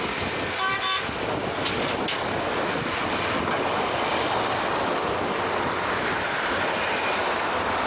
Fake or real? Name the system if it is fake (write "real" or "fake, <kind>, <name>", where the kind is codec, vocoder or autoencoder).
real